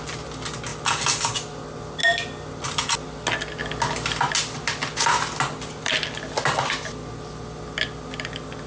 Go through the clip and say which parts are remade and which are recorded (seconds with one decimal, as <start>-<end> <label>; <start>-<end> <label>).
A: 0.0-8.7 recorded